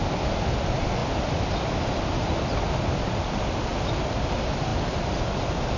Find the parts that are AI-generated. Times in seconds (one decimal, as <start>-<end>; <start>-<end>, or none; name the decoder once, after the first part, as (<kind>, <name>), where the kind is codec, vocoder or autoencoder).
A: none